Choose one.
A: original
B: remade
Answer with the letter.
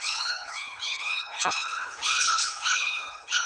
B